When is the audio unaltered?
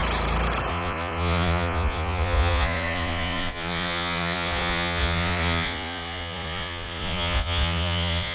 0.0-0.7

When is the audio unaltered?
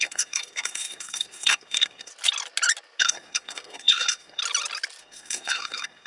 2.1-3.0; 4.4-5.0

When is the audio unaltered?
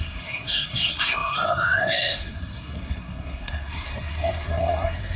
none